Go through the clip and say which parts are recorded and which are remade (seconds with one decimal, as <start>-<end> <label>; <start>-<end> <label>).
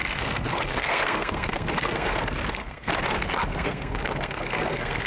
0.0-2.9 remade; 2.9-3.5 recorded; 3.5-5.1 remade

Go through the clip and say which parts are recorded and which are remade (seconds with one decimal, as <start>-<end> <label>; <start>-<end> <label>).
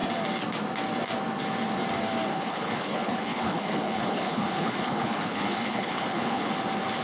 0.0-2.3 recorded; 2.3-6.5 remade; 6.5-7.0 recorded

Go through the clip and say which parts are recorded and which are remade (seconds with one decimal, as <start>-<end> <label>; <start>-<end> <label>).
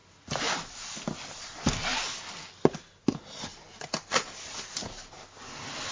0.0-5.9 recorded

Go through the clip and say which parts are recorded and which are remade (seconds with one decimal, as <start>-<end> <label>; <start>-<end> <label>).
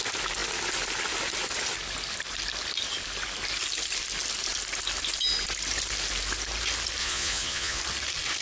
0.0-7.0 recorded; 7.0-7.8 remade; 7.8-8.4 recorded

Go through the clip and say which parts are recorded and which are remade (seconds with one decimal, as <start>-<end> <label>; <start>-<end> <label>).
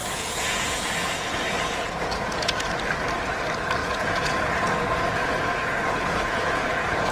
0.0-2.7 remade; 2.7-3.8 recorded; 3.8-7.1 remade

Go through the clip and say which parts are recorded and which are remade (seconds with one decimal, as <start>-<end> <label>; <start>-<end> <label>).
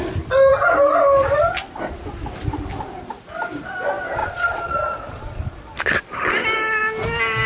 0.0-4.2 recorded; 4.2-5.4 remade; 5.4-7.5 recorded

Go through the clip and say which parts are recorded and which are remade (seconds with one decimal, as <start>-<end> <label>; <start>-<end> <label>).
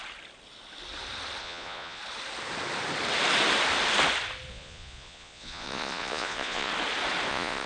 0.0-1.4 recorded; 1.4-2.0 remade; 2.0-4.5 recorded; 4.5-6.7 remade; 6.7-7.3 recorded; 7.3-7.7 remade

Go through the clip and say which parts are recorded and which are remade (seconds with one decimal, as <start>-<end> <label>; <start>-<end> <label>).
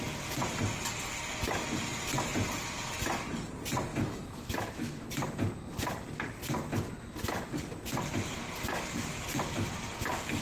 0.0-3.9 recorded; 3.9-5.1 remade; 5.1-10.4 recorded